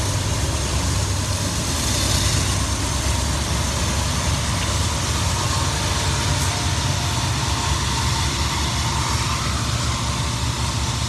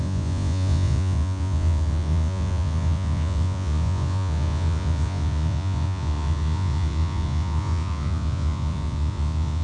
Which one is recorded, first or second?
first